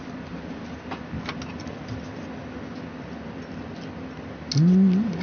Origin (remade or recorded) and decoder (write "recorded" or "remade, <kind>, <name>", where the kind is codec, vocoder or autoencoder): recorded